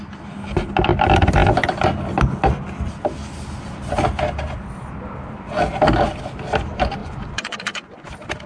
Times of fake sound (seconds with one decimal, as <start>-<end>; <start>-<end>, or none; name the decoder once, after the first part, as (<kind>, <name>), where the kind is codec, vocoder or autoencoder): 7.0-8.1 (vocoder, Vocos)